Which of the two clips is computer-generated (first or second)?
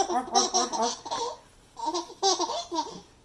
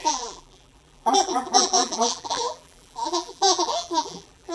second